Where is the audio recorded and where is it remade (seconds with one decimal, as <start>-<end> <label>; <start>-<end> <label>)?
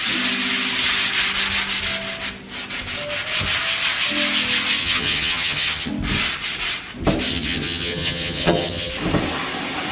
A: 0.0-4.8 recorded; 4.8-5.9 remade; 5.9-7.3 recorded; 7.3-8.9 remade; 8.9-9.9 recorded